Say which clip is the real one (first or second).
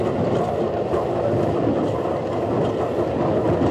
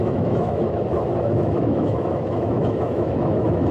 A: first